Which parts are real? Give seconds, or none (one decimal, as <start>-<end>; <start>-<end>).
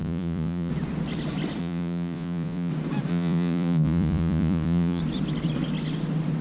0.7-1.6; 2.7-3.1; 5.0-6.4